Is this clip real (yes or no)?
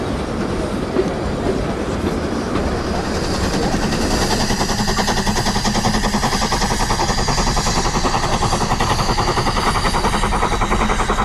yes